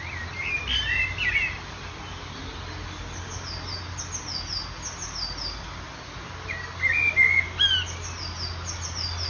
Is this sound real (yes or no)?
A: yes